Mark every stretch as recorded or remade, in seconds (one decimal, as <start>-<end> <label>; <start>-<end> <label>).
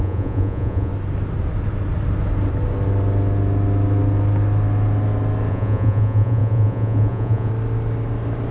0.0-0.9 remade; 0.9-5.5 recorded; 5.5-7.5 remade; 7.5-8.5 recorded